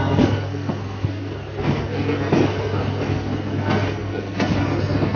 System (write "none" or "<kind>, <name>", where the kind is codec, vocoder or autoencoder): codec, SNAC